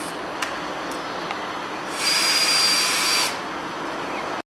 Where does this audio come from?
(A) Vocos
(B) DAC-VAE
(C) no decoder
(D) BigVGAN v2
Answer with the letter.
C